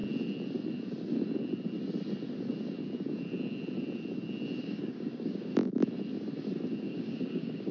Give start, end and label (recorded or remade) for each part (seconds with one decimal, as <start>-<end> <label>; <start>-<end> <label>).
0.0-4.6 recorded; 4.6-5.5 remade; 5.5-6.8 recorded; 6.8-7.7 remade